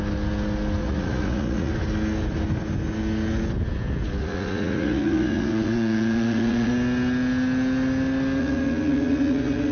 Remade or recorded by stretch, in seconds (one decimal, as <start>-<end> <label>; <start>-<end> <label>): 0.0-0.8 recorded; 0.8-1.7 remade; 1.7-4.2 recorded; 4.2-6.7 remade; 6.7-8.4 recorded; 8.4-9.7 remade